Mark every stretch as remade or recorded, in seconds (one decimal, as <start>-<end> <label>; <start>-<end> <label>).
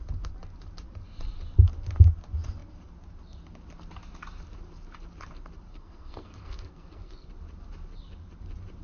0.0-5.7 recorded; 5.7-7.3 remade; 7.3-8.8 recorded